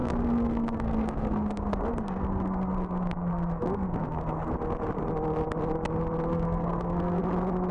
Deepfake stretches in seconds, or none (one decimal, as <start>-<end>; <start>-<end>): 0.0-4.5; 6.3-7.2

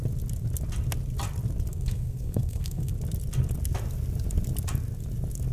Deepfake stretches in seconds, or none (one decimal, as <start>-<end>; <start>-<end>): 1.7-2.9

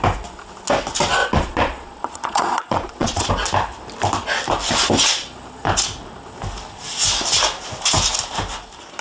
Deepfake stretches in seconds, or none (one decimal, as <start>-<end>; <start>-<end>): 1.2-3.3

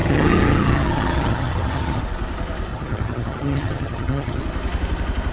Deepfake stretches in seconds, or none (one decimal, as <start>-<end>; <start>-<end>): 0.0-2.0; 2.7-4.4

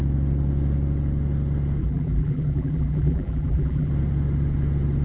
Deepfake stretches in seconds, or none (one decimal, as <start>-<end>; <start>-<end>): 1.8-3.9

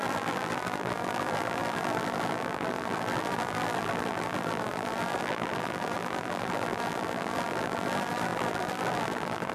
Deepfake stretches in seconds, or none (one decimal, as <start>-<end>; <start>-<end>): 0.0-9.5